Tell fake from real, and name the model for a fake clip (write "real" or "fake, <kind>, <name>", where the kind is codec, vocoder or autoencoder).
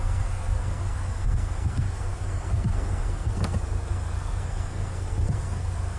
fake, codec, SNAC